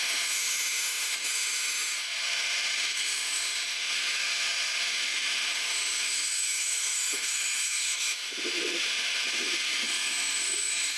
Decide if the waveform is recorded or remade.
remade